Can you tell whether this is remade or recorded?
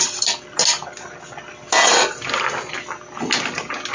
recorded